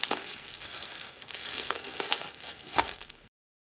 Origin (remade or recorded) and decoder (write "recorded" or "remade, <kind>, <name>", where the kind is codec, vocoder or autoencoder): remade, codec, SNAC